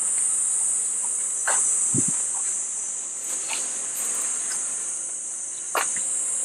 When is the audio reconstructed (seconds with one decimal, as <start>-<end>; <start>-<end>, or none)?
none